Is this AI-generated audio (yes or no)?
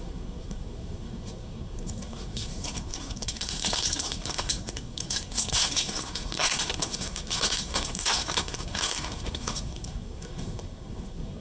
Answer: yes